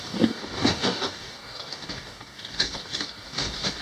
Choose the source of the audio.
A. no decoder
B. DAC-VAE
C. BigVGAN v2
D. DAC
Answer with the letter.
D